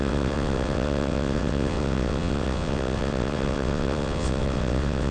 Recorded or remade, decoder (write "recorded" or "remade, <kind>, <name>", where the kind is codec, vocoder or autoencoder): remade, vocoder, WaveNeXt